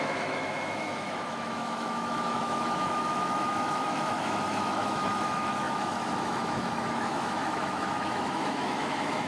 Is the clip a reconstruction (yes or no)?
yes